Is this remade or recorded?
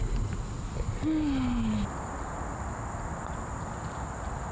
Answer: recorded